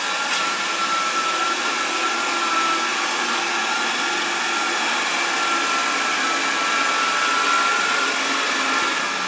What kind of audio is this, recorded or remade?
recorded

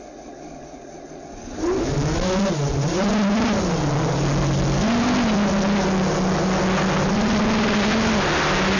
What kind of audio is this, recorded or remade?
recorded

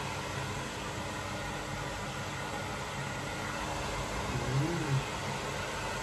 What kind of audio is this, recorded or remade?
recorded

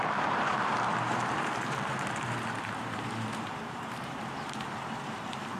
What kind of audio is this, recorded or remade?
remade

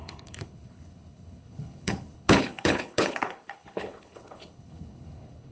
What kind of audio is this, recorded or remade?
remade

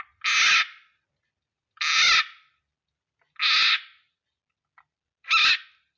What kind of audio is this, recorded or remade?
recorded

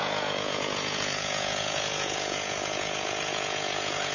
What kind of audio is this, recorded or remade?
remade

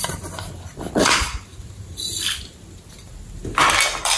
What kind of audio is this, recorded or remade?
recorded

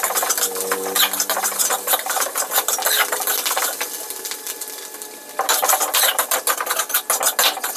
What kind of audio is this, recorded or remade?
recorded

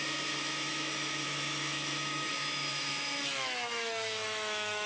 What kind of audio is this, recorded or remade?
remade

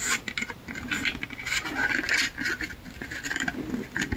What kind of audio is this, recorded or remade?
recorded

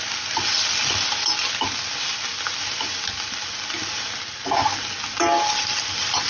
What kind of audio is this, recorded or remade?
recorded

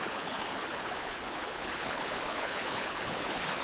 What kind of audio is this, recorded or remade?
remade